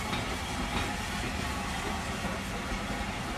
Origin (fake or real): real